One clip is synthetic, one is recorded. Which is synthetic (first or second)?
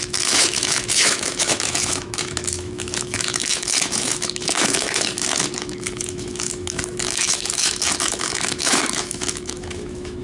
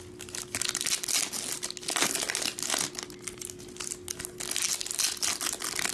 first